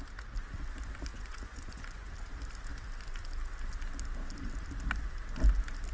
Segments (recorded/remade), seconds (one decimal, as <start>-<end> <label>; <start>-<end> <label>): 0.0-1.1 recorded; 1.1-2.1 remade; 2.1-5.9 recorded

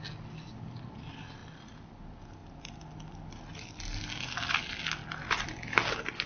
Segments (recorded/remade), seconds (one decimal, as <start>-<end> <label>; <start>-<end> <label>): 0.0-6.3 recorded

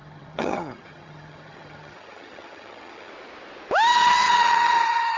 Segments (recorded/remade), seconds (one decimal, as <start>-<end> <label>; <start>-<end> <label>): 0.0-3.1 remade; 3.1-3.9 recorded; 3.9-5.2 remade

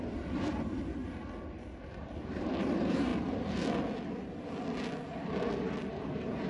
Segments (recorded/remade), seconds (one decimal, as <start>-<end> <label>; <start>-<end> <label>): 0.0-1.0 remade; 1.0-1.8 recorded; 1.8-3.1 remade; 3.1-5.9 recorded; 5.9-6.5 remade

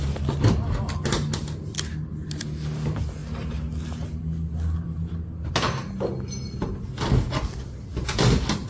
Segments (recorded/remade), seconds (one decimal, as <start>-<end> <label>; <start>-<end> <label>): 0.0-8.7 recorded

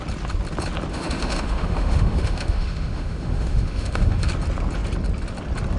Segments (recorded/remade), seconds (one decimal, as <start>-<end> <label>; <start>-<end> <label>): 0.0-0.9 recorded; 0.9-4.3 remade; 4.3-5.8 recorded

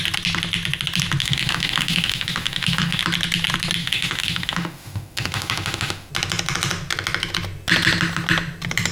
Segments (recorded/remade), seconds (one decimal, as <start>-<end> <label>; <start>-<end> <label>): 0.0-1.2 recorded; 1.2-3.0 remade; 3.0-3.8 recorded; 3.8-6.1 remade; 6.1-8.9 recorded